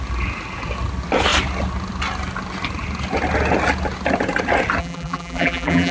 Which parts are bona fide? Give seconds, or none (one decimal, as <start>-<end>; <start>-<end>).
0.0-4.8